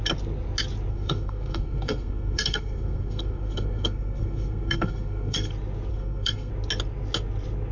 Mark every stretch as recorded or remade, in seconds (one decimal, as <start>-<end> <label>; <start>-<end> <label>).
0.0-0.9 recorded; 0.9-5.5 remade; 5.5-5.9 recorded; 5.9-6.5 remade; 6.5-7.7 recorded